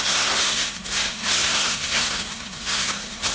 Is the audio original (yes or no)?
no